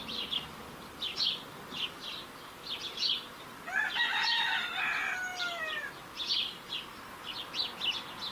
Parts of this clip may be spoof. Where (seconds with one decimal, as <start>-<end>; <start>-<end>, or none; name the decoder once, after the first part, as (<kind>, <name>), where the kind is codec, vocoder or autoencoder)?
0.0-1.4 (vocoder, BigVGAN v2); 5.3-6.0